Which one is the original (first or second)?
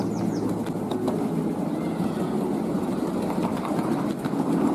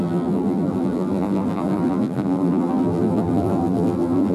first